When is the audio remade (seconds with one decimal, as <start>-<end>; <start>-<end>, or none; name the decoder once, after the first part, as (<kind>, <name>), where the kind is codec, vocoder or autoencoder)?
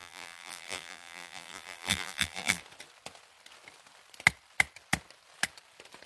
0.0-2.6 (vocoder, BigVGAN v2)